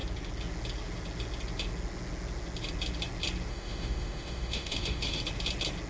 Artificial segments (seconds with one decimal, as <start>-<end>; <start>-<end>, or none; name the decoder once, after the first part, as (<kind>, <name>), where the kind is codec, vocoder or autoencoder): 3.5-5.2 (autoencoder, DAC-VAE)